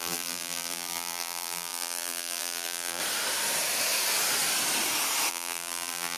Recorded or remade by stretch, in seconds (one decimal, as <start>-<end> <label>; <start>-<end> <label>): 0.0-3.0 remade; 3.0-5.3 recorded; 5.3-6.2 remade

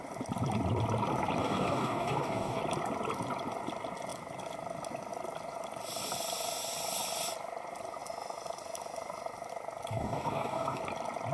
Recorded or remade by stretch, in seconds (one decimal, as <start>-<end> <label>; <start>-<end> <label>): 0.0-1.4 recorded; 1.4-2.6 remade; 2.6-9.9 recorded; 9.9-10.8 remade; 10.8-11.3 recorded

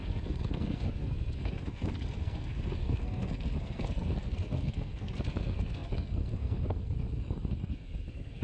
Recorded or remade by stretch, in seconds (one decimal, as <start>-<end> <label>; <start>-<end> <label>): 0.0-8.4 remade

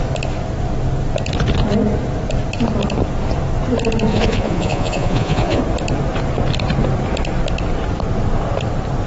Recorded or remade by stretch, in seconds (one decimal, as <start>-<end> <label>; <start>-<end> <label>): 0.0-4.1 recorded; 4.1-5.6 remade; 5.6-9.1 recorded

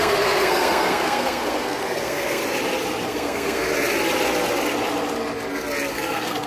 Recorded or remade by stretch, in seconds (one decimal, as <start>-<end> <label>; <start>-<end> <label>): 0.0-2.4 remade; 2.4-3.1 recorded; 3.1-3.7 remade; 3.7-5.9 recorded; 5.9-6.5 remade

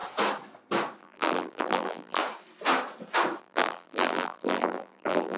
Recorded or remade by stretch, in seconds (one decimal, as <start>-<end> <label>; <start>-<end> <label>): 0.0-1.0 recorded; 1.0-2.2 remade; 2.2-3.4 recorded; 3.4-5.4 remade

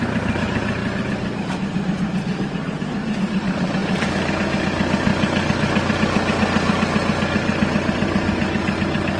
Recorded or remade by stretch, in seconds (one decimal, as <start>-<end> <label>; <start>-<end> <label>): 0.0-0.8 remade; 0.8-1.4 recorded; 1.4-5.1 remade; 5.1-9.2 recorded